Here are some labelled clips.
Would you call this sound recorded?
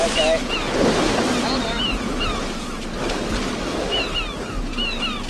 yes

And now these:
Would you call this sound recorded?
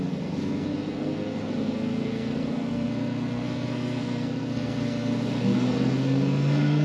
no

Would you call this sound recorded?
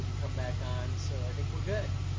yes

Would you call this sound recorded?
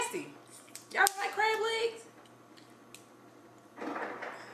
yes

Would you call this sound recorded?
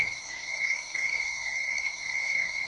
no